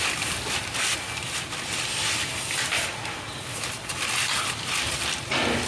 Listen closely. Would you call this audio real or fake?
real